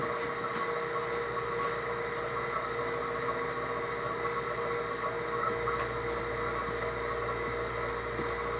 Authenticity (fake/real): real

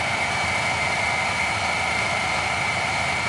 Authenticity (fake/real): fake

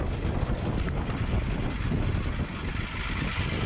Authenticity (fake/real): real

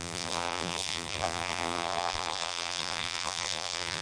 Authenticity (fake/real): fake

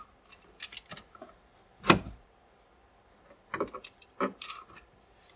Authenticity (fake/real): real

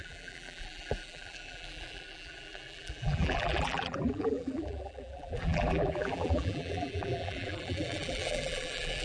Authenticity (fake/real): fake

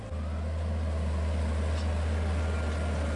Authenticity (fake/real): real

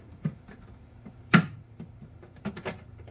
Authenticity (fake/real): fake